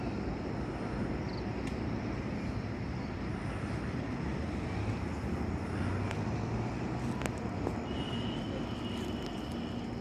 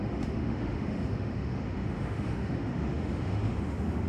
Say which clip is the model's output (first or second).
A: second